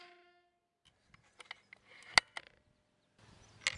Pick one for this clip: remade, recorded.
recorded